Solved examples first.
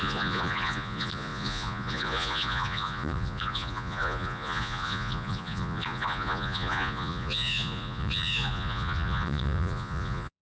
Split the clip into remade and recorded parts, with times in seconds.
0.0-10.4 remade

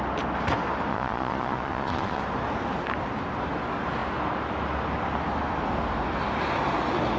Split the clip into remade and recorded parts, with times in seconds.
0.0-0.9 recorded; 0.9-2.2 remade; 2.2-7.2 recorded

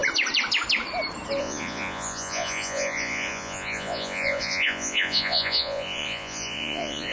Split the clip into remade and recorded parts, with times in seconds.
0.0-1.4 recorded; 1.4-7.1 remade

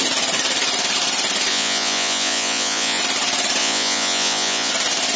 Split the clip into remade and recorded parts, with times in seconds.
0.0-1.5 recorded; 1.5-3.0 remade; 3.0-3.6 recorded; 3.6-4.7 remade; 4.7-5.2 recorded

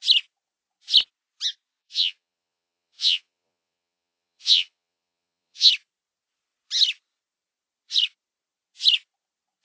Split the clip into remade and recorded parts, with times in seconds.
0.0-1.8 recorded; 1.8-5.7 remade; 5.7-9.6 recorded

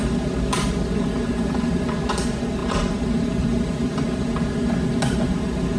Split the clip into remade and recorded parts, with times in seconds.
0.0-5.8 recorded